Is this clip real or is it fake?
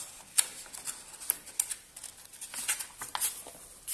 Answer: real